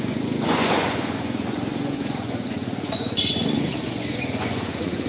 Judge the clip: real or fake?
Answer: fake